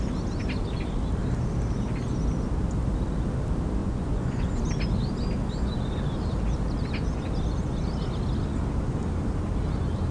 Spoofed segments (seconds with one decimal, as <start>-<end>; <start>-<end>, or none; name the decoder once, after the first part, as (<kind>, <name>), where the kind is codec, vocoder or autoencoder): 3.8-4.6 (vocoder, Vocos)